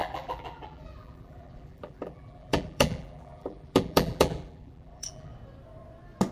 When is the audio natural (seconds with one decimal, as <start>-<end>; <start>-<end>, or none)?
5.3-6.3